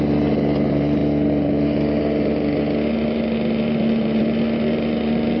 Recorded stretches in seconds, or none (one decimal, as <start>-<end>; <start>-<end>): 0.0-5.4

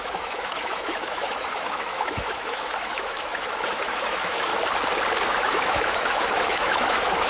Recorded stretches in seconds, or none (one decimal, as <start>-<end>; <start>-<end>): 4.5-5.2

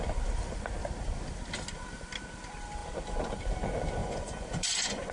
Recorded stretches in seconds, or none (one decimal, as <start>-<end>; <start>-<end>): 0.0-4.0

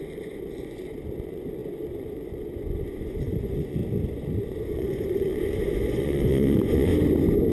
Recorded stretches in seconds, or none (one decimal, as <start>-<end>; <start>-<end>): 3.8-4.4; 6.9-7.5

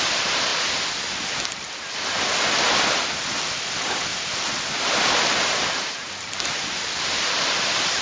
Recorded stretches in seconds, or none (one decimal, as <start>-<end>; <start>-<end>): 0.0-4.1; 7.6-8.0

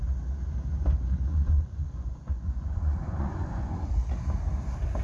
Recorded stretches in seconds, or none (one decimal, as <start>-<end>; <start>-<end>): 0.0-1.3; 3.7-5.0

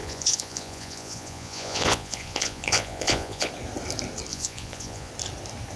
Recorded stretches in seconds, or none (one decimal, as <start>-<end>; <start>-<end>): 3.5-4.3; 5.1-5.8